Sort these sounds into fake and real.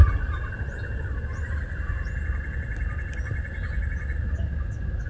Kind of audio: real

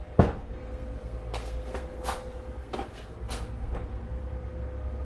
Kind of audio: fake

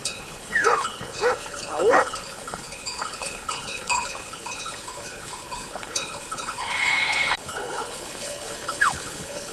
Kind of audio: fake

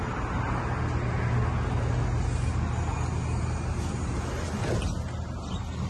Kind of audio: real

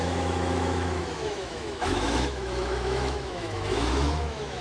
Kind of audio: fake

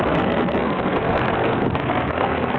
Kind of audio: fake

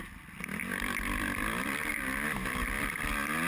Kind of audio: fake